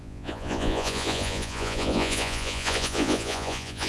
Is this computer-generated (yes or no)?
yes